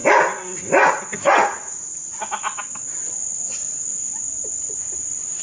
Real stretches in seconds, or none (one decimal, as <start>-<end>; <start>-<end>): 0.0-0.9; 2.2-5.4